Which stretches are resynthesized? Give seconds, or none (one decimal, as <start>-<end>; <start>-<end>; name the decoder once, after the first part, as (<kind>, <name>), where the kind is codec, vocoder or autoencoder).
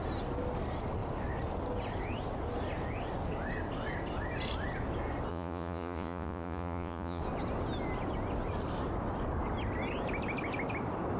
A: 5.3-7.2 (vocoder, Vocos)